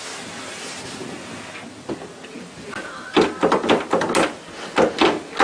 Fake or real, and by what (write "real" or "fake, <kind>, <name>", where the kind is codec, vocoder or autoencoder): real